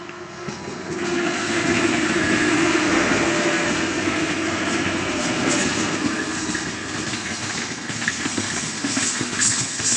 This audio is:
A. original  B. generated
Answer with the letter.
B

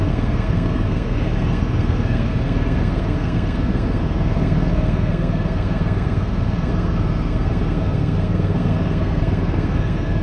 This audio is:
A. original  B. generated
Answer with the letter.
B